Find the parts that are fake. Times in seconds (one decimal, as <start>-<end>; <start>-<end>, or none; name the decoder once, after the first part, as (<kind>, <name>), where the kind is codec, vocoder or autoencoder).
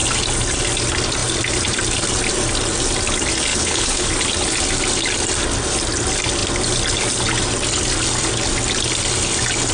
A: 3.5-4.1 (codec, HILCodec)